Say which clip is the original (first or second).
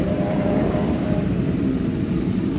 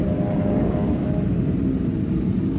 second